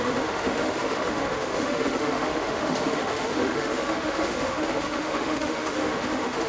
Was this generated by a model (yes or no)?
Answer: yes